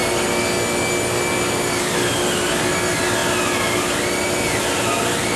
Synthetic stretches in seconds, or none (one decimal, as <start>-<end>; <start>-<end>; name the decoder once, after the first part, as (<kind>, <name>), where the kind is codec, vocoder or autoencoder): none